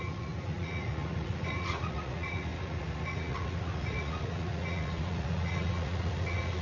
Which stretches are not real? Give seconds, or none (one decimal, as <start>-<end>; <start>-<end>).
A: 0.0-6.6